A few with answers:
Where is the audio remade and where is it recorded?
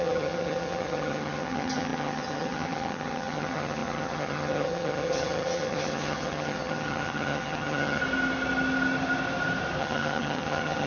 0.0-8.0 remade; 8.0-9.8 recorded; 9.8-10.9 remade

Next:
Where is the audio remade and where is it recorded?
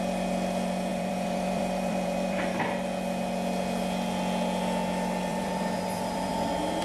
0.0-0.9 recorded; 0.9-2.6 remade; 2.6-5.3 recorded; 5.3-6.3 remade; 6.3-6.8 recorded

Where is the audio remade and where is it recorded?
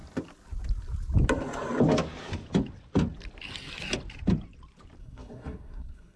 0.0-5.0 recorded; 5.0-6.2 remade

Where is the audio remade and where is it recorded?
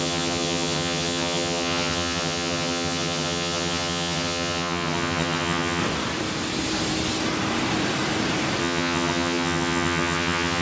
0.0-5.8 remade; 5.8-8.6 recorded; 8.6-10.6 remade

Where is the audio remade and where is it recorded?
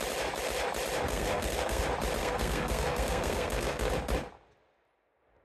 0.0-1.1 recorded; 1.1-1.8 remade; 1.8-2.2 recorded; 2.2-3.9 remade; 3.9-5.4 recorded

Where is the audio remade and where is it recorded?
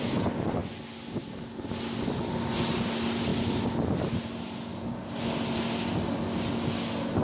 0.0-7.2 recorded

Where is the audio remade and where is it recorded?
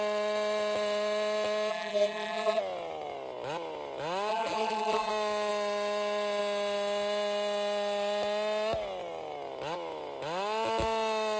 0.0-1.7 recorded; 1.7-2.6 remade; 2.6-4.3 recorded; 4.3-5.1 remade; 5.1-11.4 recorded